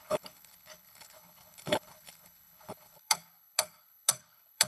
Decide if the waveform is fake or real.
fake